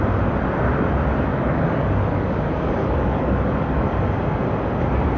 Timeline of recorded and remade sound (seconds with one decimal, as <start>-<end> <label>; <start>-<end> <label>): 0.0-1.3 recorded; 1.3-4.0 remade; 4.0-5.2 recorded